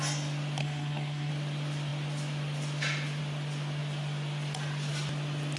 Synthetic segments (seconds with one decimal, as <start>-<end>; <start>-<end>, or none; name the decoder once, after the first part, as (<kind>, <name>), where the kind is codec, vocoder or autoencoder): 0.6-1.3 (codec, SNAC)